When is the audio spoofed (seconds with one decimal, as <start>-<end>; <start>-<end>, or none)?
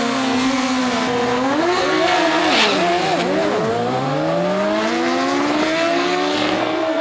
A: 0.0-0.8; 1.6-2.4; 5.6-7.0